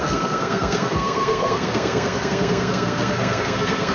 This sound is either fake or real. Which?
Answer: fake